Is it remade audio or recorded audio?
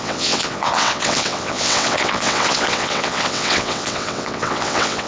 remade